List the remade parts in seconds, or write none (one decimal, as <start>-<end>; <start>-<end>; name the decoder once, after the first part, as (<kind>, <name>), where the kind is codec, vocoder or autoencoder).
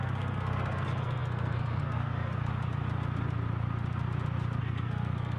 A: 0.0-2.5 (codec, SNAC); 4.6-5.4